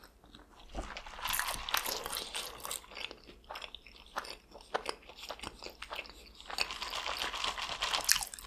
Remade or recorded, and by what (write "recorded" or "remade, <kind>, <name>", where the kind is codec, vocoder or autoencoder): recorded